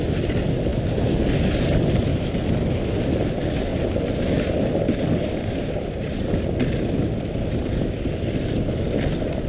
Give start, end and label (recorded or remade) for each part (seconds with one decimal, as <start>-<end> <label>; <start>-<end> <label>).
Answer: 0.0-2.1 recorded; 2.1-2.9 remade; 2.9-9.5 recorded